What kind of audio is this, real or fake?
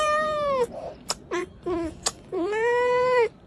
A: fake